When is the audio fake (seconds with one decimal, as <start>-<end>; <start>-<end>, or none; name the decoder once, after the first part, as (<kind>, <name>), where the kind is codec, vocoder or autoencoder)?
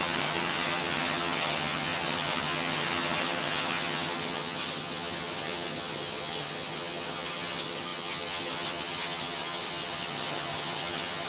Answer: 0.0-11.3 (vocoder, HiFi-GAN)